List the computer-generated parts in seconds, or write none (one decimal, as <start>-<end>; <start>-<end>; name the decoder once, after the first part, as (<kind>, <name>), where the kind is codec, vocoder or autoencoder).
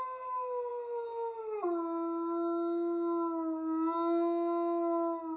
none